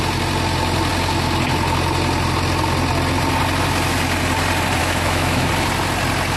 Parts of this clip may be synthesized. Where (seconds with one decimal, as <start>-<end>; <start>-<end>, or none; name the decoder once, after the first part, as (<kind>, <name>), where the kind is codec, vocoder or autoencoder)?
4.8-5.5 (autoencoder, DAC-VAE)